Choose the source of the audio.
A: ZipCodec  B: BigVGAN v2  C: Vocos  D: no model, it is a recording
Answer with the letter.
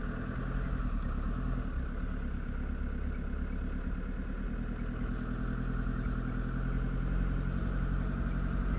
D